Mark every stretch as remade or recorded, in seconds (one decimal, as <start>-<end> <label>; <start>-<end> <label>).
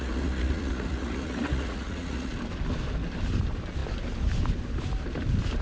0.0-2.3 remade; 2.3-5.6 recorded